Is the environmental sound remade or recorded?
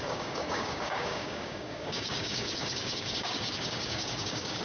remade